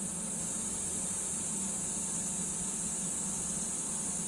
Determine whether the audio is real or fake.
real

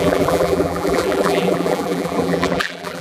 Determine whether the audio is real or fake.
fake